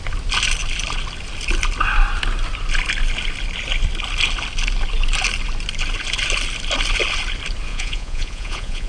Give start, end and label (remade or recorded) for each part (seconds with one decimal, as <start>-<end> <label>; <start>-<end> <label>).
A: 0.0-7.7 recorded; 7.7-8.9 remade

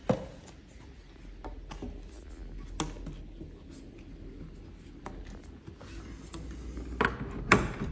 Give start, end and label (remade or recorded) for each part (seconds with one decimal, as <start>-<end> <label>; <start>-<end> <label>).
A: 0.0-7.9 recorded

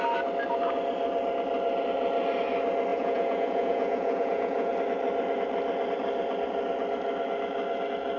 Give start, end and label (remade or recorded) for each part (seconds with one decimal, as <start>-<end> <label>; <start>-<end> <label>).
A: 0.0-2.9 recorded; 2.9-4.7 remade; 4.7-8.2 recorded